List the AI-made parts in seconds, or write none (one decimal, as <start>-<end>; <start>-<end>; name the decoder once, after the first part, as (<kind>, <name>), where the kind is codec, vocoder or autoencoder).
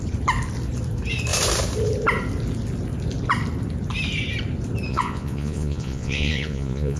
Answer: 4.9-7.0 (vocoder, Vocos)